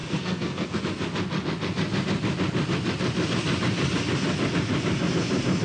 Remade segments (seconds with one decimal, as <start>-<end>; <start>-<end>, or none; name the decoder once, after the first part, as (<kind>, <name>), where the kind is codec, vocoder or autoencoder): 0.0-0.8 (codec, SNAC)